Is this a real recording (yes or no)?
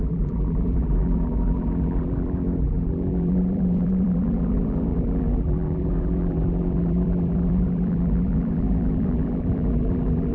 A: no